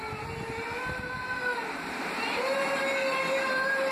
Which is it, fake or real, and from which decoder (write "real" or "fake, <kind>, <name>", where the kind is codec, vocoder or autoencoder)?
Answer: real